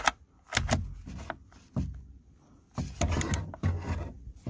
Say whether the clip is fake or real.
real